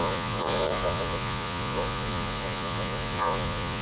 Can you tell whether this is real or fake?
fake